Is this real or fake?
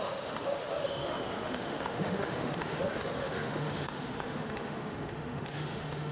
fake